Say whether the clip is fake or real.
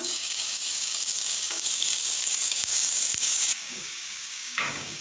fake